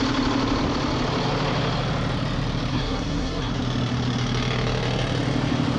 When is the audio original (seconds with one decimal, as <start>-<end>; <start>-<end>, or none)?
0.0-2.7; 3.5-5.8